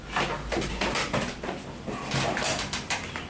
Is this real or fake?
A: fake